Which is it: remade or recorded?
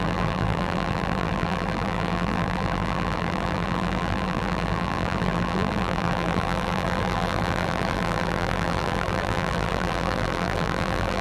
remade